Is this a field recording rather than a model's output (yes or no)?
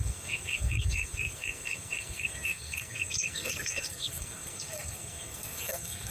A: no